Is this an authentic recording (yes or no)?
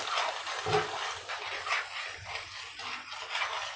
yes